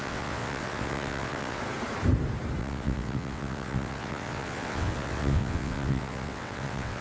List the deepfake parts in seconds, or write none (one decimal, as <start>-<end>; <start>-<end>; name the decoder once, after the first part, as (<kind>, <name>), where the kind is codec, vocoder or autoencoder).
0.0-1.6 (vocoder, WaveNeXt); 2.6-7.0